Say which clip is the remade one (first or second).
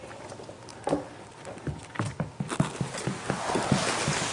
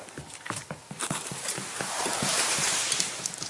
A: second